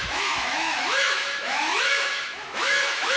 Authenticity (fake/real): fake